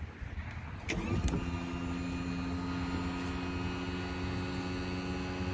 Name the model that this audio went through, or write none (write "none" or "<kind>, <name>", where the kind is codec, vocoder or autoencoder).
none